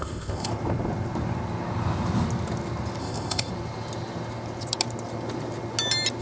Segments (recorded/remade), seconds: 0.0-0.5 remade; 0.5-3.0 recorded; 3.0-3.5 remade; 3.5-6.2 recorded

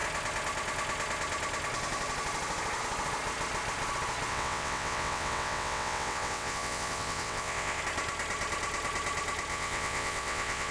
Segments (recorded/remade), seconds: 0.0-4.3 recorded; 4.3-7.8 remade; 7.8-9.5 recorded; 9.5-10.7 remade

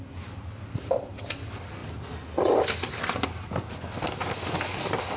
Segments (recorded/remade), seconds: 0.0-5.2 recorded